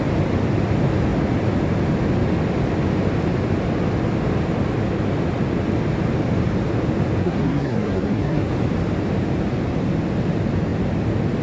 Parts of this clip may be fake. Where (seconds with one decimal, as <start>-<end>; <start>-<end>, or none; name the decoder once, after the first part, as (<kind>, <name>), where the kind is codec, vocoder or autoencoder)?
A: 7.2-8.5 (codec, SNAC)